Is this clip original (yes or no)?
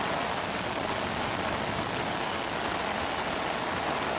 yes